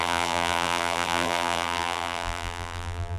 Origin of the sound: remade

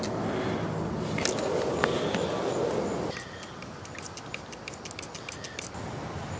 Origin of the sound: recorded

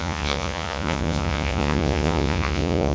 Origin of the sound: remade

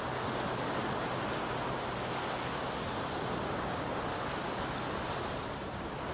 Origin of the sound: recorded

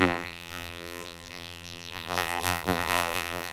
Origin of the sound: remade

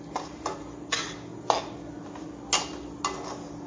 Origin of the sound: recorded